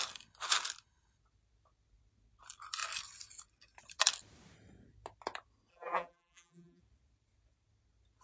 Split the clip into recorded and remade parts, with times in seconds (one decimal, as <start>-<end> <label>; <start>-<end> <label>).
0.0-5.7 recorded; 5.7-6.8 remade; 6.8-8.2 recorded